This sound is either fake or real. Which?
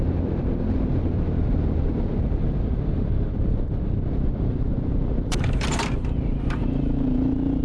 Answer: fake